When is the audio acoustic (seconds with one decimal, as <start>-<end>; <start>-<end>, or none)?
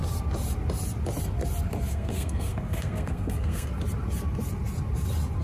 0.0-1.9; 3.7-5.4